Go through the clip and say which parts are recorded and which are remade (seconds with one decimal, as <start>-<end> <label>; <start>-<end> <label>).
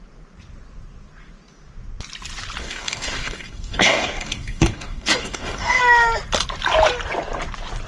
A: 0.0-2.6 recorded; 2.6-5.8 remade; 5.8-7.9 recorded